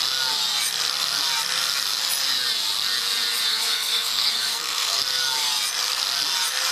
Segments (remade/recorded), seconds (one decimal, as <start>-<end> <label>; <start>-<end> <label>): 0.0-3.5 recorded; 3.5-5.0 remade; 5.0-6.7 recorded